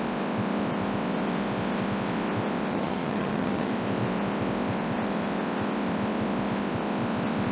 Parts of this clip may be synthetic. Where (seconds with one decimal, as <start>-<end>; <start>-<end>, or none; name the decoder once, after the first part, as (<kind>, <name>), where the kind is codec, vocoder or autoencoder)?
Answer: 2.7-3.7 (vocoder, HiFi-GAN)